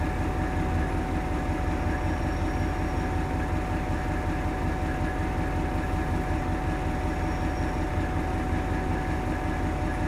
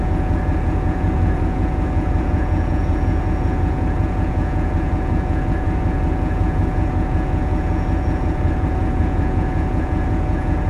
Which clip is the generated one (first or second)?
second